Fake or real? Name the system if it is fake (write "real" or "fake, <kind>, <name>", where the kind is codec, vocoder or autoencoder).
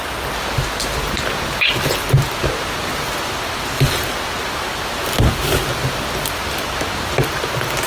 real